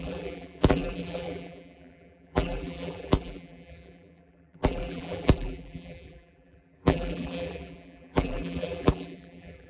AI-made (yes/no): yes